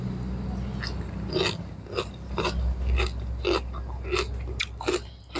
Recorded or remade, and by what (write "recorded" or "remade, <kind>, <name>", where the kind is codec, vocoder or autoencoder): recorded